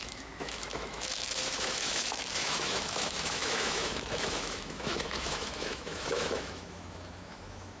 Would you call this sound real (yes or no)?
no